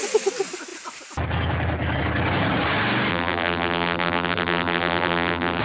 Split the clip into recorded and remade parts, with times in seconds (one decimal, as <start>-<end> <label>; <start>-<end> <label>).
0.0-3.1 recorded; 3.1-5.6 remade